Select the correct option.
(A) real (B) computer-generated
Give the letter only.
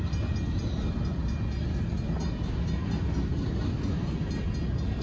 A